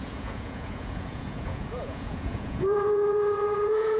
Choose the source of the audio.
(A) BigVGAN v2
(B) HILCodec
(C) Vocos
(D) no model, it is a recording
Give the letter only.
C